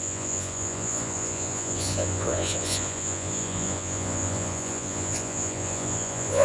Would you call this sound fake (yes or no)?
yes